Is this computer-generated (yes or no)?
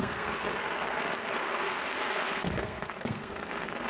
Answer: yes